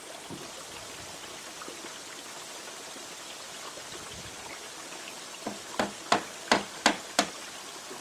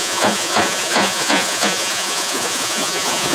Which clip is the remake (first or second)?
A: second